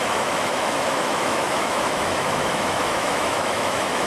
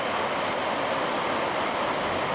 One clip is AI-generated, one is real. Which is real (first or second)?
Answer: second